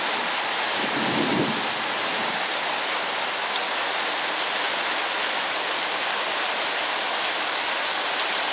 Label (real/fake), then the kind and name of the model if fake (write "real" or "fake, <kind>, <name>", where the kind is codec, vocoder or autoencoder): real